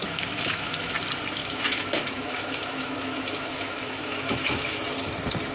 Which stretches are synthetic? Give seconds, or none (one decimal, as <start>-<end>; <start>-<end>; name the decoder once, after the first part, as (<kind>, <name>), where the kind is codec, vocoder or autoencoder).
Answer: 0.0-0.9 (autoencoder, DAC-VAE); 1.4-4.7